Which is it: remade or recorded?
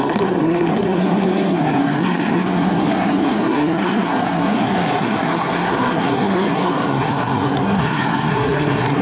remade